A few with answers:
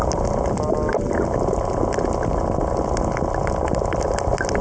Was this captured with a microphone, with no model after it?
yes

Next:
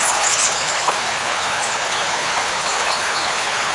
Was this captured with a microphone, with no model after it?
no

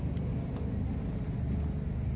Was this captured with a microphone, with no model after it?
yes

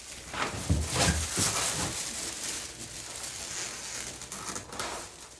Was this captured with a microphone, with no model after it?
yes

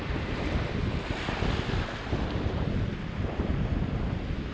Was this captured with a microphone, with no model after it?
yes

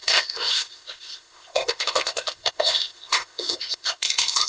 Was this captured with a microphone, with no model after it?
no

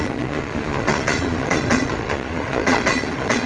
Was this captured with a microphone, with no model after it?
no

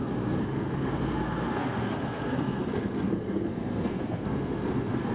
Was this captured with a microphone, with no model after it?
no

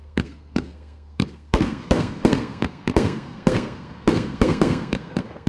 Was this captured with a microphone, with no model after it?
no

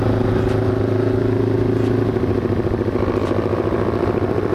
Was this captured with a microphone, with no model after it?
yes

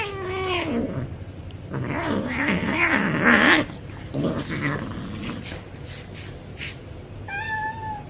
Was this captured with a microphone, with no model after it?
yes